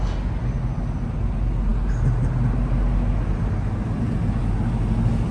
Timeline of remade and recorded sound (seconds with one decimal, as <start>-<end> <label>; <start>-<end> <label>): 0.0-5.3 recorded